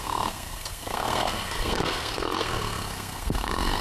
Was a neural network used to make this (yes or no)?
yes